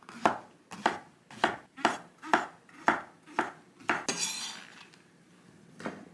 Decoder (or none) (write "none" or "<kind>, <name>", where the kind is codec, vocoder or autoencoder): none